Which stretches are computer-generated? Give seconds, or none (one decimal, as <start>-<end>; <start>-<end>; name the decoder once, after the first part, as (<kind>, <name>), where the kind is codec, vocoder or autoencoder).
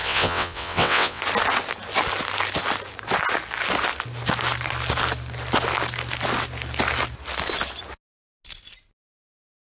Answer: 0.0-1.2 (vocoder, WaveNeXt)